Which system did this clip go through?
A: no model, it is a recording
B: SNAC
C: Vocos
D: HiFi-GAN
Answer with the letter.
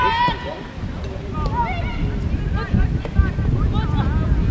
A